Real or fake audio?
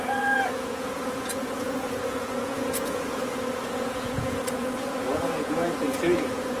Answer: fake